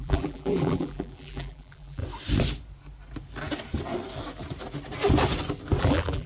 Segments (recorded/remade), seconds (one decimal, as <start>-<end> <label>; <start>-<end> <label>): 0.0-2.0 remade; 2.0-5.8 recorded; 5.8-6.3 remade